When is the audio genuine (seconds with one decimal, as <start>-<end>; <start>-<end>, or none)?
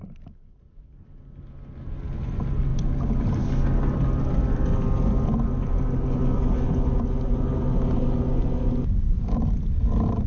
0.0-10.3